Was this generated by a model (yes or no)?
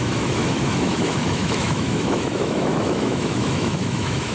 yes